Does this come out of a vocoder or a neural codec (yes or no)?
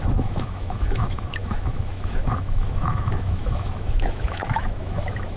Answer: yes